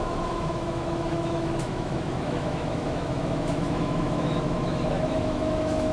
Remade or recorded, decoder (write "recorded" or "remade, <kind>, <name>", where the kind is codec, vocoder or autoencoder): remade, autoencoder, DAC-VAE